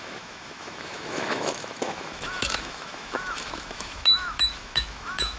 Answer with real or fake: fake